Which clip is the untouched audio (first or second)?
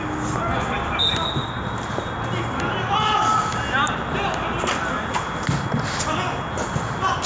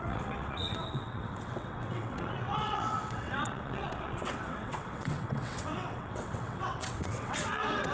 first